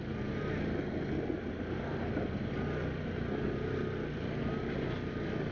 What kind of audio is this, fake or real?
real